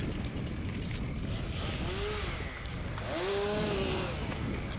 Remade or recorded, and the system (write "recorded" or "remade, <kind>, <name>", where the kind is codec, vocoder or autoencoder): recorded